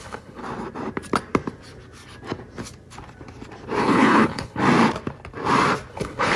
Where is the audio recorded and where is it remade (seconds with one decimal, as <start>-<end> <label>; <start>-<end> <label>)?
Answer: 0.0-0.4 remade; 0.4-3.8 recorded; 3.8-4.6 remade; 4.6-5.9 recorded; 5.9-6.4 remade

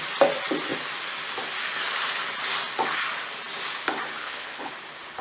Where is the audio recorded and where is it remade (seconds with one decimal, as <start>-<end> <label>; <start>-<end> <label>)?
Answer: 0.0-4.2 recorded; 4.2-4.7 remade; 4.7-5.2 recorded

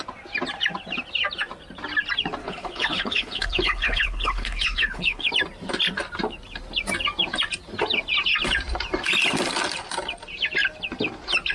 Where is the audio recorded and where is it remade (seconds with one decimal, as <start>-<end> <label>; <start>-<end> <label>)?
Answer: 0.0-2.4 recorded; 2.4-5.3 remade; 5.3-11.5 recorded

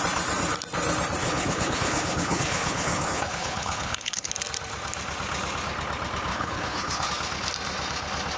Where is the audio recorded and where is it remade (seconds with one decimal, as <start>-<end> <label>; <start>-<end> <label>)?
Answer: 0.0-1.2 recorded; 1.2-4.3 remade; 4.3-6.3 recorded; 6.3-7.1 remade; 7.1-8.4 recorded

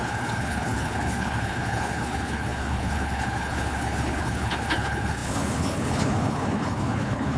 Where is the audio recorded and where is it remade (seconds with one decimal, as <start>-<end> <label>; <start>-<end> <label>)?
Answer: 0.0-7.4 remade